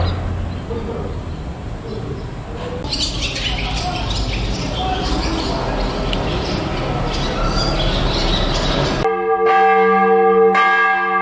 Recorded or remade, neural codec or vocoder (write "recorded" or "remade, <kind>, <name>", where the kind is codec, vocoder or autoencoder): recorded